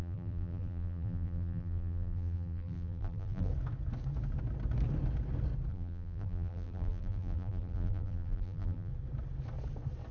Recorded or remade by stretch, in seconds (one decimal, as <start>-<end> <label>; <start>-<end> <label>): 0.0-3.5 remade; 3.5-5.7 recorded; 5.7-8.9 remade; 8.9-10.1 recorded